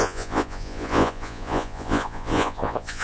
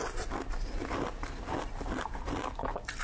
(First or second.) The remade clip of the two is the first